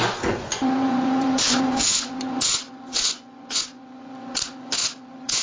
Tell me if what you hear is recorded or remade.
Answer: remade